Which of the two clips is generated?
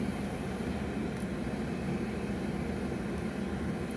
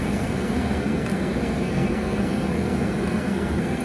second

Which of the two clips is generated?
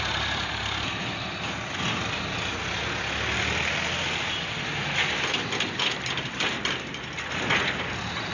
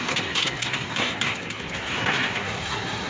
second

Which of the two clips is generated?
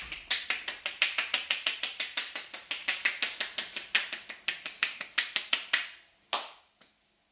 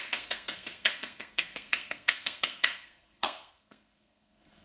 second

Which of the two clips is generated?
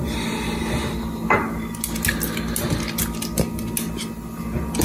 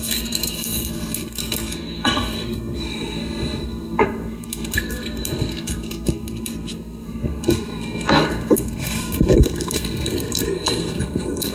second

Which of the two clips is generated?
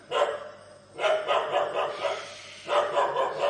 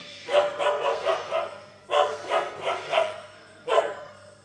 second